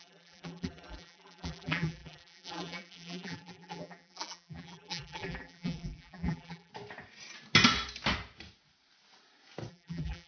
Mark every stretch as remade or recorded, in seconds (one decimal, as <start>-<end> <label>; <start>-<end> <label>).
0.0-6.7 remade; 6.7-9.7 recorded; 9.7-10.3 remade